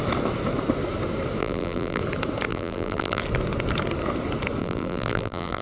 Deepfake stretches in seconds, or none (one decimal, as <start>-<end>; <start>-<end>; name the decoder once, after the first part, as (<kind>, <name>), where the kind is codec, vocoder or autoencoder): 1.4-2.0 (vocoder, BigVGAN v2); 2.5-3.2; 4.6-5.6